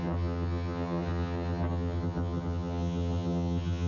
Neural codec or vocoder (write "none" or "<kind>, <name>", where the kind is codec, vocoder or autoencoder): vocoder, HiFi-GAN